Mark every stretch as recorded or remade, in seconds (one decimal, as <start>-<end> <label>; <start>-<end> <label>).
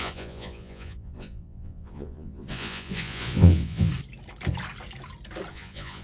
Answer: 0.0-3.9 remade; 3.9-5.5 recorded; 5.5-6.0 remade